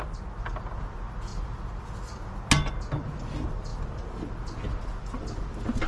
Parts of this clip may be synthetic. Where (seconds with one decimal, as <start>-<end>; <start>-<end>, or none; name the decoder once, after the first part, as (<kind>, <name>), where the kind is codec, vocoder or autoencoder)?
none

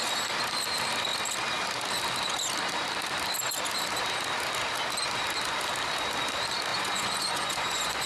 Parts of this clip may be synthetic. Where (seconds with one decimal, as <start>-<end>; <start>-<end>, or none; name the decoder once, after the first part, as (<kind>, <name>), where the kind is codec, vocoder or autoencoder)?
6.7-8.1 (vocoder, Vocos)

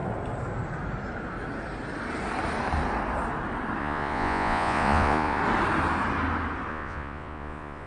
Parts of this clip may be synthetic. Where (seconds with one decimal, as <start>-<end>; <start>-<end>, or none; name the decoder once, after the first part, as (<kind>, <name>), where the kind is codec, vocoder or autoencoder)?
3.8-5.4 (vocoder, Vocos); 6.7-7.9

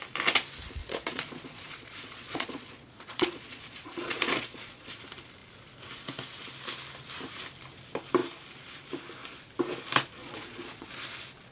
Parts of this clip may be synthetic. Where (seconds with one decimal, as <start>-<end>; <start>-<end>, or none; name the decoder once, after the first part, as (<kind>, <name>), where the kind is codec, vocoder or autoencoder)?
0.8-4.9 (vocoder, Vocos); 10.2-10.9

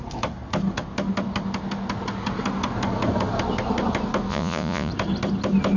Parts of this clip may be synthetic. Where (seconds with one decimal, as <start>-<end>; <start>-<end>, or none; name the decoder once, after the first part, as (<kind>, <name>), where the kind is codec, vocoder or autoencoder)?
4.3-4.9 (vocoder, Vocos)